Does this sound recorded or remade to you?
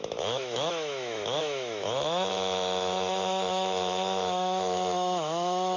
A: remade